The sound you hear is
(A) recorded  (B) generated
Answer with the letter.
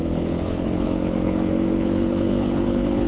B